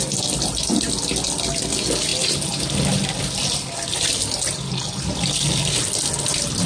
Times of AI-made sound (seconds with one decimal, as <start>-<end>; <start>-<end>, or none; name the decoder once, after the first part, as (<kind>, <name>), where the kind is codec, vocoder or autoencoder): none